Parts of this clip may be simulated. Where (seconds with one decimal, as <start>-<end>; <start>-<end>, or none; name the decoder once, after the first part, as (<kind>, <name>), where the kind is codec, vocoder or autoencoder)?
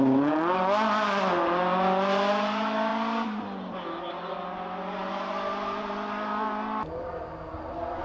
none